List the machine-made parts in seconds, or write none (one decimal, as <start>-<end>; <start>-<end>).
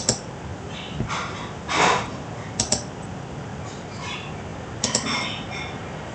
none